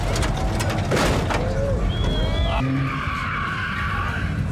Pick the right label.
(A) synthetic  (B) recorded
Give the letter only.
B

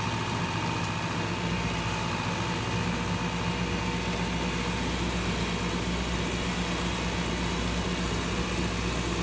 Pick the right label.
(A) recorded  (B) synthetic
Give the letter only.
A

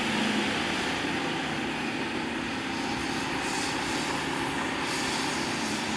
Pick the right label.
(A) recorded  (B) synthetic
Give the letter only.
A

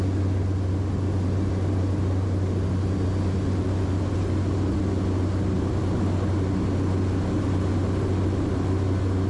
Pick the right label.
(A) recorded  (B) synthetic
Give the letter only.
A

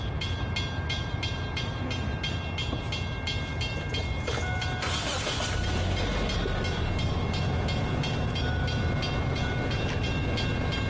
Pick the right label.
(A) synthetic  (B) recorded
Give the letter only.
B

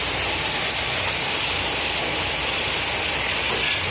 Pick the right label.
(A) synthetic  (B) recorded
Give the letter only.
A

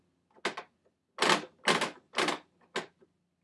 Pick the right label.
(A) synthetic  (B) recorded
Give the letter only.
B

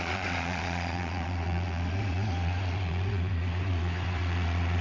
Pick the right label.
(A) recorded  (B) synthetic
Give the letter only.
B